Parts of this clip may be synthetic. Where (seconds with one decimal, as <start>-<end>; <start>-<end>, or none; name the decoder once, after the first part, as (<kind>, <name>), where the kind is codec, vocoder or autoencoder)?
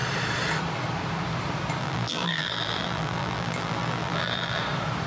1.8-4.6 (vocoder, BigVGAN v2)